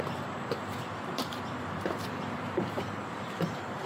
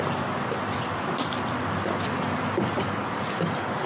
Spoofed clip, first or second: first